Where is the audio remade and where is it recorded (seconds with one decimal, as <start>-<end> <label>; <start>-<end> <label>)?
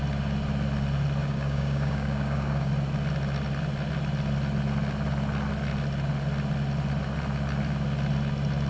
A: 0.0-1.2 recorded; 1.2-2.7 remade; 2.7-8.7 recorded